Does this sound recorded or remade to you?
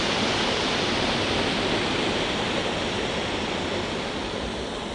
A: recorded